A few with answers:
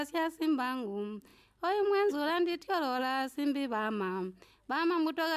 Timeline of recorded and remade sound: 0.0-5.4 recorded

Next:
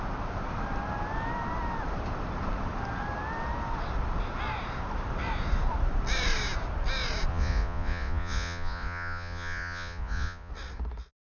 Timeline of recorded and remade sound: 0.0-7.3 recorded; 7.3-10.5 remade; 10.5-11.3 recorded

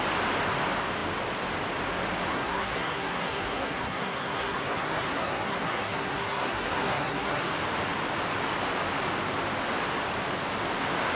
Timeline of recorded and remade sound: 0.0-2.3 recorded; 2.3-7.4 remade; 7.4-11.1 recorded

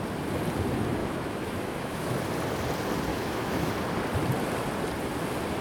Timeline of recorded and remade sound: 0.0-1.0 recorded; 1.0-2.2 remade; 2.2-3.1 recorded; 3.1-3.7 remade; 3.7-5.6 recorded

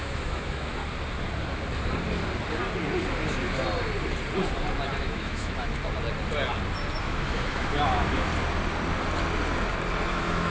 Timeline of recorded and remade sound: 0.0-0.8 remade; 0.8-5.0 recorded; 5.0-5.8 remade; 5.8-7.0 recorded; 7.0-8.3 remade; 8.3-10.1 recorded; 10.1-10.5 remade

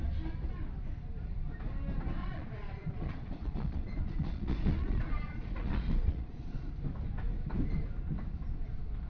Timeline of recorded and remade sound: 0.0-2.2 recorded; 2.2-6.7 remade; 6.7-9.1 recorded

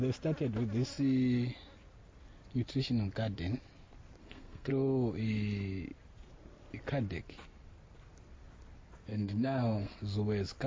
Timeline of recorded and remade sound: 0.0-4.2 recorded; 4.2-4.7 remade; 4.7-9.1 recorded; 9.1-10.0 remade; 10.0-10.7 recorded